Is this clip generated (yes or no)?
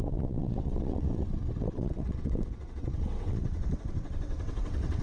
yes